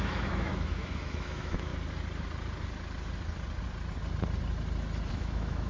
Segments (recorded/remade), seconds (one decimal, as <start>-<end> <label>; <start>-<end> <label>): 0.0-1.7 remade; 1.7-5.1 recorded; 5.1-5.7 remade